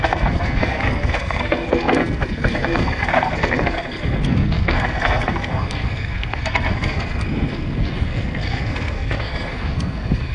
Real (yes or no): no